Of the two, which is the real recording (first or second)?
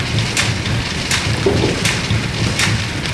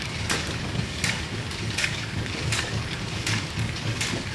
first